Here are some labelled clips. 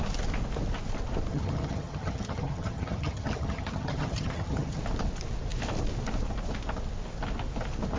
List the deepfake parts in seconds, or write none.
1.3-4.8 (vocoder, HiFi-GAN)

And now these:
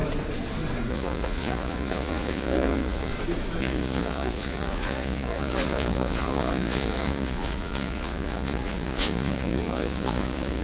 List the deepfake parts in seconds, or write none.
0.9-3.1 (vocoder, Vocos); 3.6-10.6

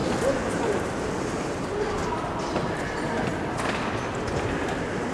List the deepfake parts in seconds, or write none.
0.0-0.9 (vocoder, BigVGAN v2)

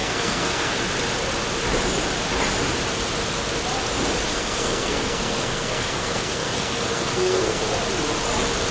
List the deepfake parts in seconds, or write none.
0.0-0.8 (codec, SNAC); 4.3-7.6

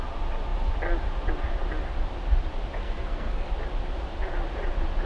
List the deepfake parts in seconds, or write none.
2.8-3.5 (codec, SNAC)

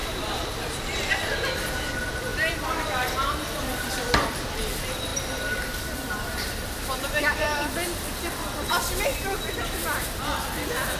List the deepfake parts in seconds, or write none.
0.0-1.1 (vocoder, BigVGAN v2); 2.3-3.6; 5.1-7.2

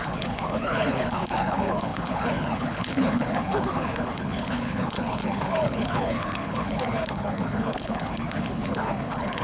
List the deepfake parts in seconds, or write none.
0.0-9.4 (codec, HILCodec)